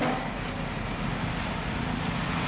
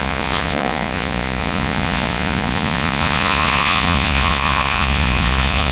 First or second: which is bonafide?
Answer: first